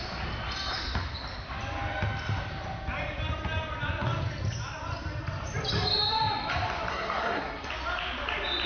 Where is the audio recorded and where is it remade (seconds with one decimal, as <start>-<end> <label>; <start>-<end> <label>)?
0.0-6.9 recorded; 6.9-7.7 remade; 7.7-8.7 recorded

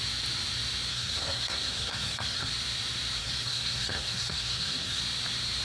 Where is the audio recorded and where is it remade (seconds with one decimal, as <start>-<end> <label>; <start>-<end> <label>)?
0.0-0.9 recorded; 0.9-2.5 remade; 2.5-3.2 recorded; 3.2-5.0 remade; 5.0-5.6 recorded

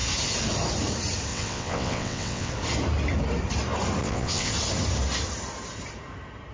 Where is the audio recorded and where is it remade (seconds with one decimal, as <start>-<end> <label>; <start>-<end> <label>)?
0.0-1.3 recorded; 1.3-2.5 remade; 2.5-4.0 recorded; 4.0-4.5 remade; 4.5-6.5 recorded

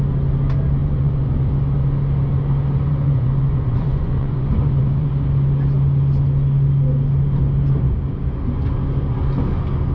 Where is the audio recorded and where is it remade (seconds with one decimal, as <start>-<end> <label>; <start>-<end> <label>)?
0.0-0.8 recorded; 0.8-1.5 remade; 1.5-2.9 recorded; 2.9-5.1 remade; 5.1-9.9 recorded

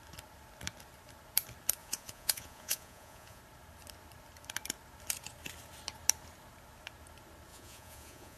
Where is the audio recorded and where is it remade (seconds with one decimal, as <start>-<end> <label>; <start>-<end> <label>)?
0.0-1.8 recorded; 1.8-3.4 remade; 3.4-7.5 recorded; 7.5-8.4 remade